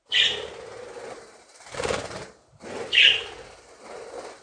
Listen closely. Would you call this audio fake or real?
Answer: real